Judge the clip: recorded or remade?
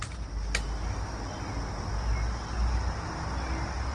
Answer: recorded